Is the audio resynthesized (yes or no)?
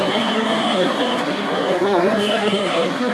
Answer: yes